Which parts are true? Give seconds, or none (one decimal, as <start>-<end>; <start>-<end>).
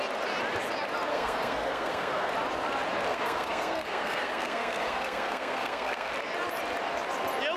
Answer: 0.0-1.1; 2.3-3.1; 6.1-7.6